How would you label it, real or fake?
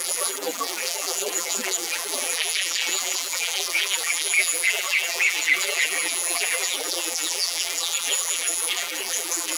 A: fake